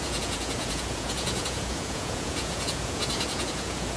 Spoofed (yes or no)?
yes